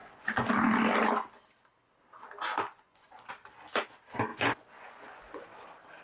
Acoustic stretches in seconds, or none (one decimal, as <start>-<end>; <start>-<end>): 0.5-2.5; 3.3-4.3; 5.4-6.0